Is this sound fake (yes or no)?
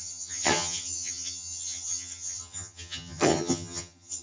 yes